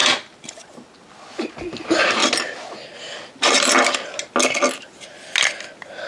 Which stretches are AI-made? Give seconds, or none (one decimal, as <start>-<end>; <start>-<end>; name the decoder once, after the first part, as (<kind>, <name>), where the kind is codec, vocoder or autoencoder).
none